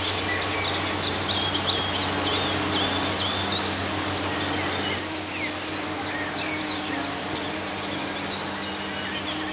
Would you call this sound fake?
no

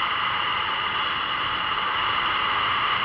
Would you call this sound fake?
no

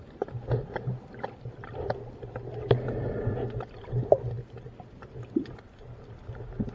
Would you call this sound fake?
no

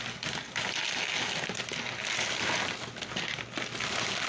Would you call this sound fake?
no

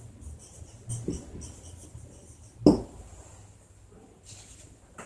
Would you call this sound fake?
no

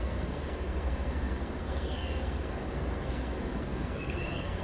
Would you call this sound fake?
yes